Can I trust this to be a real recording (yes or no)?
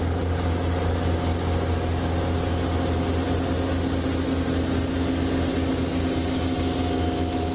yes